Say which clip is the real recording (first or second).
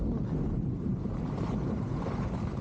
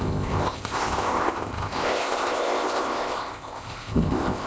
first